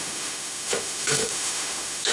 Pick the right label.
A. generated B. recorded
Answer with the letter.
A